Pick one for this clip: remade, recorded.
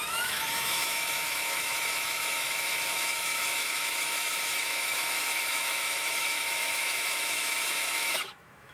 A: remade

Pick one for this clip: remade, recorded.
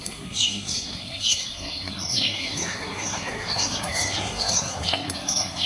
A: remade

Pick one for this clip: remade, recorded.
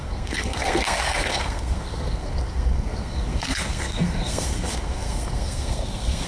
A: remade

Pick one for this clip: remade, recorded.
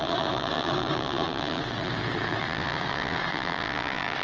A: remade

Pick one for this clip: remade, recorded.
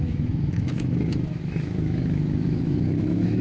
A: remade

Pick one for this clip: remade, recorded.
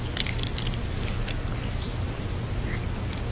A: recorded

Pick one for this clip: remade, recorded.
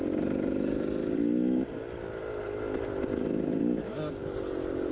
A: recorded